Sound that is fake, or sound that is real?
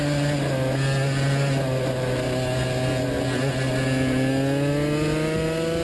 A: real